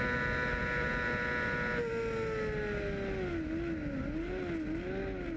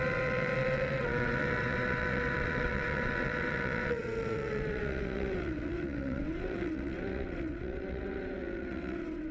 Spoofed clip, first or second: second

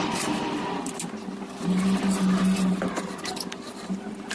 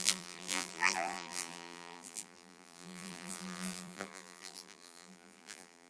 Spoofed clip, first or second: second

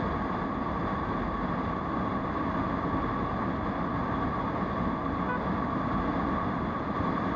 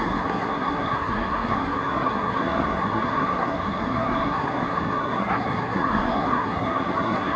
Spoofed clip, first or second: second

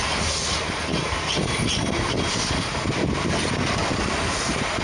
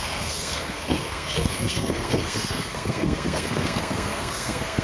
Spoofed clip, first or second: second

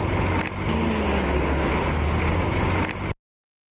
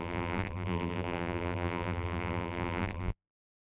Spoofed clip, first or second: second